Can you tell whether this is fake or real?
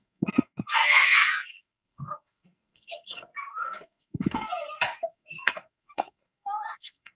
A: fake